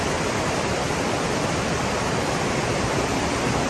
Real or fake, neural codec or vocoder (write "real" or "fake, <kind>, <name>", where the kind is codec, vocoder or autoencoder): real